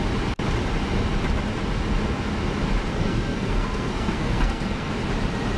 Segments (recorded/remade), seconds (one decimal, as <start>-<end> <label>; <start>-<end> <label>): 0.0-2.9 recorded; 2.9-4.9 remade; 4.9-5.6 recorded